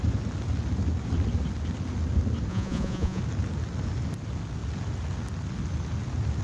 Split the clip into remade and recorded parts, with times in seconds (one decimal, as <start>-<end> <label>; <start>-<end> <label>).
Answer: 0.0-2.5 recorded; 2.5-3.2 remade; 3.2-6.4 recorded